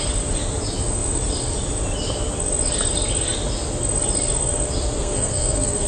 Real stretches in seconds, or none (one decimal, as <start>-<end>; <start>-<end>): 0.0-5.0